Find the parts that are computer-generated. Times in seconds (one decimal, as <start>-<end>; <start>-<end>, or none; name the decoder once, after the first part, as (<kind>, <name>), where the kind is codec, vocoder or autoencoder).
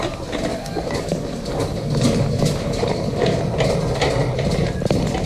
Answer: 0.5-3.4 (codec, DAC)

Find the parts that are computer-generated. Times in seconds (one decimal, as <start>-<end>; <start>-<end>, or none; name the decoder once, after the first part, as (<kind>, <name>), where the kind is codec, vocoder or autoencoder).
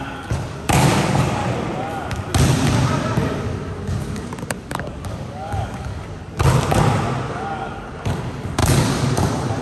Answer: 0.0-1.4 (codec, DAC); 3.4-6.2; 7.3-9.6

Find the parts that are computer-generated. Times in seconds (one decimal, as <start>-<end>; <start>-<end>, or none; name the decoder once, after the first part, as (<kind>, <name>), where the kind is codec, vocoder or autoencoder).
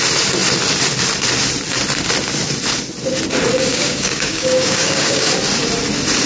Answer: 3.7-5.3 (codec, DAC)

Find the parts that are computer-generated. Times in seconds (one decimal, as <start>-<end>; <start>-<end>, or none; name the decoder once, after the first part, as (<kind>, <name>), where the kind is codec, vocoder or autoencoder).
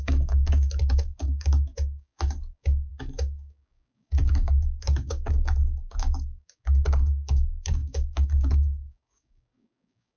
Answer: 0.0-10.2 (codec, DAC)